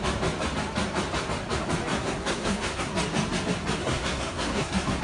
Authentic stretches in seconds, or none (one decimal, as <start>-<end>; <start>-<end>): 0.0-1.9; 2.9-3.8